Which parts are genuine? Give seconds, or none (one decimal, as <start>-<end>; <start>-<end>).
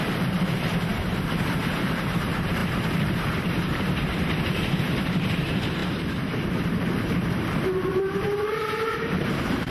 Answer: none